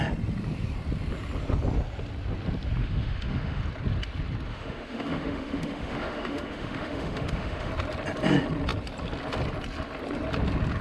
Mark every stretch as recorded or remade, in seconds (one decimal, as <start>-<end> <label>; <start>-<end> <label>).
0.0-2.8 recorded; 2.8-3.6 remade; 3.6-4.5 recorded; 4.5-7.7 remade; 7.7-10.8 recorded